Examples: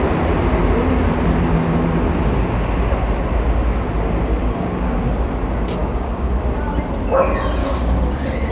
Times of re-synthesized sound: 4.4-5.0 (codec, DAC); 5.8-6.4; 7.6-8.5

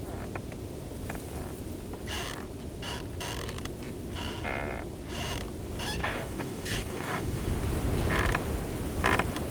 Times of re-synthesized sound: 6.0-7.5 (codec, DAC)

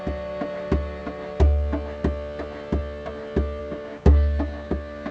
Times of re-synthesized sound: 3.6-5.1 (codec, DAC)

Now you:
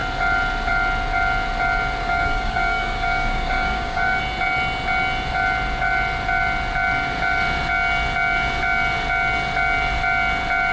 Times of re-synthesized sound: 2.0-4.2 (codec, DAC)

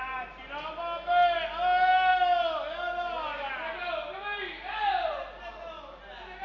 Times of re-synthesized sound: none

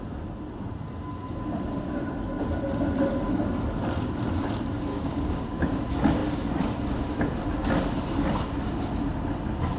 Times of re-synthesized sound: 4.9-5.8 (codec, DAC)

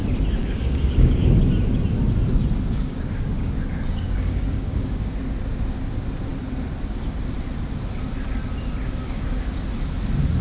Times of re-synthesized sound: 0.4-1.3 (codec, DAC); 2.8-5.2; 9.0-9.6